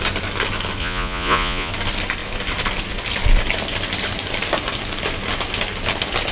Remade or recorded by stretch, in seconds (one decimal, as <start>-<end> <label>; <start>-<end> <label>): 0.0-0.8 recorded; 0.8-1.7 remade; 1.7-6.3 recorded